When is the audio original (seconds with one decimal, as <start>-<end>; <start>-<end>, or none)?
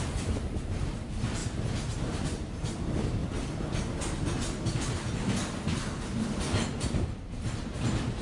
1.4-2.0; 3.2-7.2